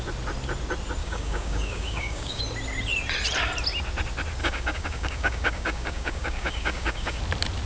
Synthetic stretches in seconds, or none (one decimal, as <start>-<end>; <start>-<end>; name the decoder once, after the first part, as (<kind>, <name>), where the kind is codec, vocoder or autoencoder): 1.0-2.4 (codec, DAC); 4.4-7.2